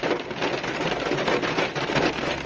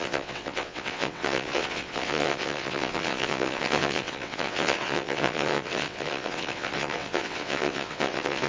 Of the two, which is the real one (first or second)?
first